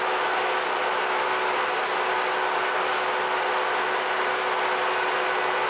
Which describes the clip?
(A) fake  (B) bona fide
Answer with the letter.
B